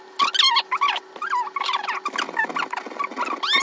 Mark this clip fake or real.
real